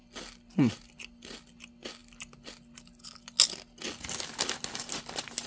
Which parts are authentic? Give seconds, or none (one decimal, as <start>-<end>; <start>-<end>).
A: 0.0-5.5